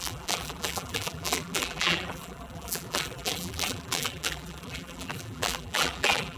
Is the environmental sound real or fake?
fake